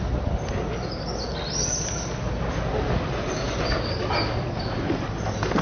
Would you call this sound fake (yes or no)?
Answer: no